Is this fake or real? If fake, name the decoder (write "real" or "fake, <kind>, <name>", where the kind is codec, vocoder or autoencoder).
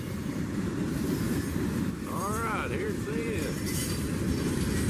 fake, vocoder, BigVGAN v2